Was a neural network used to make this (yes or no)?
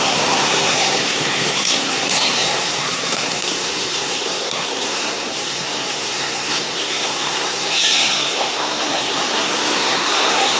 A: yes